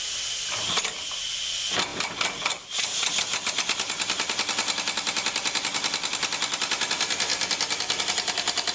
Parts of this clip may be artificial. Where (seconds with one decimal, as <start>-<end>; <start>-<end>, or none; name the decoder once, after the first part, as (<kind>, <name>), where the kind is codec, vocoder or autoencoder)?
none